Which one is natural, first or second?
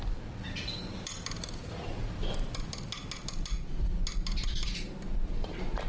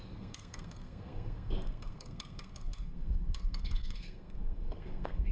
first